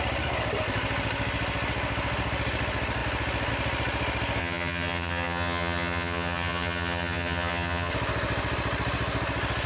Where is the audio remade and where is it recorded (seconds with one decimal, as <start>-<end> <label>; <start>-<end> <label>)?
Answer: 0.0-4.4 recorded; 4.4-7.9 remade; 7.9-9.7 recorded